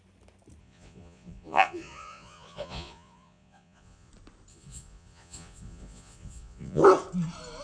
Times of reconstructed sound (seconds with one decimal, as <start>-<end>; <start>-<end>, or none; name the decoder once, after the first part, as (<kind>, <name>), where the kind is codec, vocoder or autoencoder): 0.6-4.1 (vocoder, Vocos); 4.5-6.8